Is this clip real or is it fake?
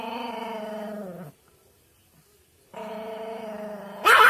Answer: real